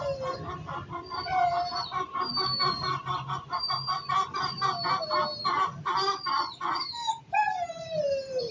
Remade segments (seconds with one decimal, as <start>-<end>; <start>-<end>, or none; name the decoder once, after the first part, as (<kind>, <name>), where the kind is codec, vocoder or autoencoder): none